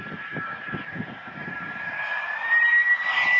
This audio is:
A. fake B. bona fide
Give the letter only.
B